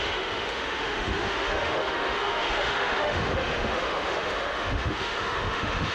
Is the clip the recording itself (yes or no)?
no